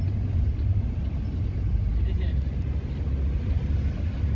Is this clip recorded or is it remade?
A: recorded